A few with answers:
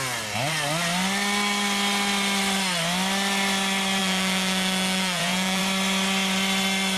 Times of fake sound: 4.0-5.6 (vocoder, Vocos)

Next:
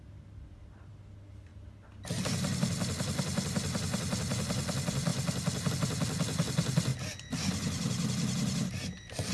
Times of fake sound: none

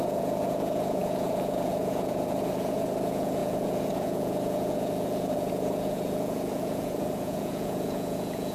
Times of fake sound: 0.0-8.5 (vocoder, Vocos)

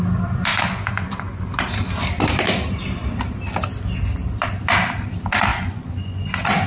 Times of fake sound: 0.5-1.4 (vocoder, Vocos); 5.5-6.3

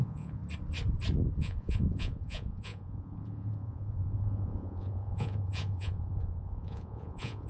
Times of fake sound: 0.0-0.4 (vocoder, Vocos); 1.4-7.5

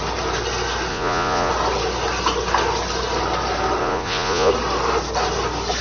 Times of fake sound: 0.9-1.5 (vocoder, Vocos); 3.8-4.5

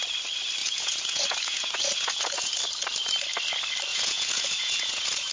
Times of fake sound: 0.6-2.5 (vocoder, Vocos); 3.9-5.3